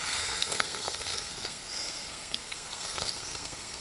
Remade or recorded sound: remade